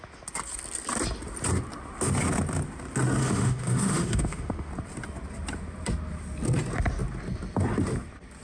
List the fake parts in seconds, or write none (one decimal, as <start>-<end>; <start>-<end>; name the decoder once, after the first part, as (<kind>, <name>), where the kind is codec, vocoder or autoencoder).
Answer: 3.2-4.7 (autoencoder, DAC-VAE)